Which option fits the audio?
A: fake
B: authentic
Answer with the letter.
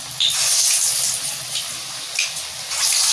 B